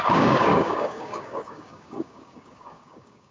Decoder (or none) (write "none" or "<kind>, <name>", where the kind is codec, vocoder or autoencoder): codec, DAC